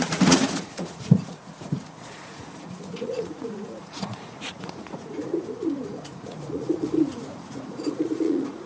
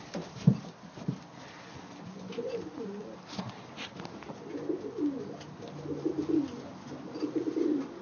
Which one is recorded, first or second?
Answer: second